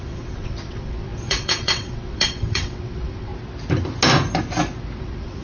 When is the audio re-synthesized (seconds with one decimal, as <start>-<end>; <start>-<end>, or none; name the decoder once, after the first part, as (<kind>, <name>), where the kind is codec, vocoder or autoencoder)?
0.0-3.3 (vocoder, WaveNeXt); 5.0-5.4